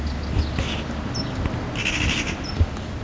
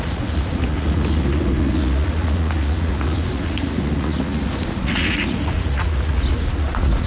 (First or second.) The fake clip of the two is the second